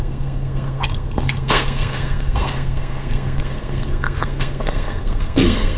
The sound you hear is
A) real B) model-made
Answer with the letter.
B